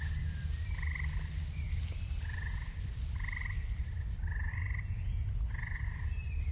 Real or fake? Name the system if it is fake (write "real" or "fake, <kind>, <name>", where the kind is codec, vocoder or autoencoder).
fake, vocoder, BigVGAN v2